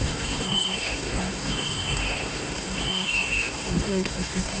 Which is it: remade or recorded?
remade